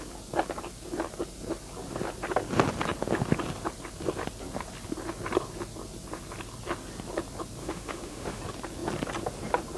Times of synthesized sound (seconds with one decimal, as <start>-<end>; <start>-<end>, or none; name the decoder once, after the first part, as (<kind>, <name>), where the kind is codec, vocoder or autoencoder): 7.6-8.4 (autoencoder, DAC-VAE)